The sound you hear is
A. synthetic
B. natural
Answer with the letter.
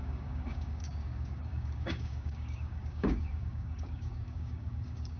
A